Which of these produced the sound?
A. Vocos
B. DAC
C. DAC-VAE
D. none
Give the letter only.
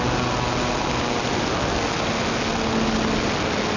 D